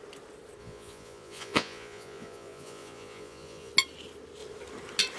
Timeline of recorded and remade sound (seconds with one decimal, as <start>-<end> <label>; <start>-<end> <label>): 0.0-0.6 recorded; 0.6-3.7 remade; 3.7-5.2 recorded